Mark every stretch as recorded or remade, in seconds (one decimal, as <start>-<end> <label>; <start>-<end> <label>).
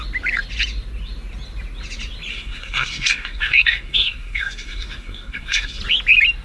0.0-2.3 recorded; 2.3-5.8 remade; 5.8-6.4 recorded